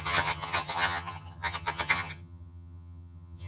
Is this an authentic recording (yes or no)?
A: no